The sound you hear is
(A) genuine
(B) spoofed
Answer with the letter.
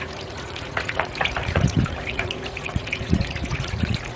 B